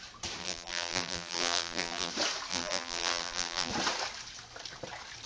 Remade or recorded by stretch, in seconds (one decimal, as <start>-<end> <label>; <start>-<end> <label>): 0.0-0.4 recorded; 0.4-2.1 remade; 2.1-2.5 recorded; 2.5-3.7 remade; 3.7-5.3 recorded